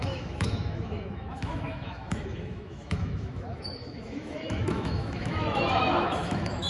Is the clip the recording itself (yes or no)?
no